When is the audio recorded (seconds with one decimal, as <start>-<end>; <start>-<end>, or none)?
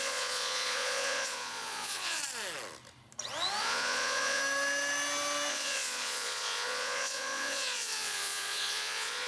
2.2-3.6; 4.4-5.5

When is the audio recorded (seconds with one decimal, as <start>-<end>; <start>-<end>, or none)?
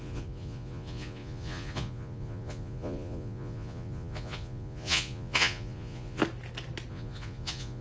6.2-6.9